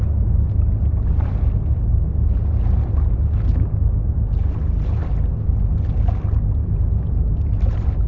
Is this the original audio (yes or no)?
yes